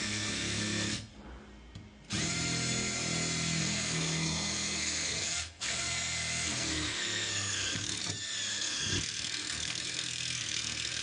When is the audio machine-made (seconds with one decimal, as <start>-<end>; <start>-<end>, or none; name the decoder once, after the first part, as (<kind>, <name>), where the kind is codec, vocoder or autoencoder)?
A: 0.0-1.1 (codec, SNAC); 3.6-8.0; 8.5-11.0